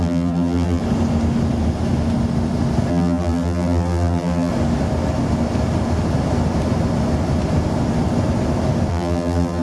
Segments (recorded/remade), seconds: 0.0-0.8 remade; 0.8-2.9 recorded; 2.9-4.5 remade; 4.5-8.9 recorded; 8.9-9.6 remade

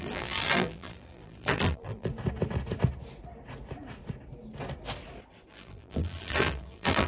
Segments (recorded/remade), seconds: 0.0-2.1 remade; 2.1-5.5 recorded; 5.5-7.1 remade

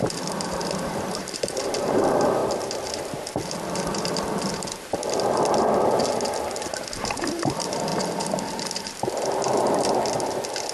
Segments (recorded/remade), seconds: 0.0-10.7 remade

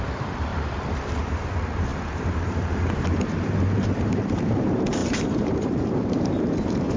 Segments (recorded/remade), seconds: 0.0-0.5 remade; 0.5-1.2 recorded; 1.2-7.0 remade

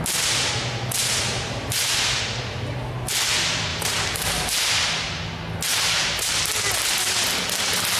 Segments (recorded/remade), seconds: 0.0-1.0 recorded; 1.0-2.2 remade; 2.2-3.7 recorded; 3.7-4.7 remade; 4.7-5.7 recorded; 5.7-6.3 remade; 6.3-8.0 recorded

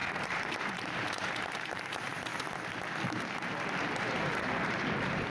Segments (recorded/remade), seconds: 0.0-2.3 remade; 2.3-4.0 recorded; 4.0-5.3 remade